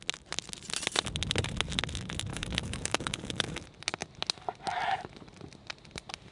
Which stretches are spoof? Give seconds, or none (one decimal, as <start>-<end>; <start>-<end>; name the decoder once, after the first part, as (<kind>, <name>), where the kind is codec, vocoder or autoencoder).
2.3-3.6 (codec, DAC)